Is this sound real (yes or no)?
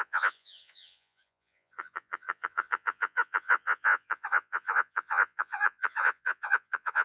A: no